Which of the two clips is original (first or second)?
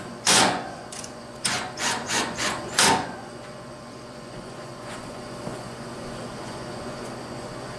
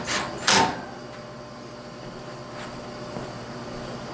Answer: second